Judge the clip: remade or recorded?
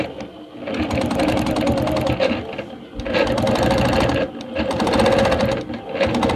recorded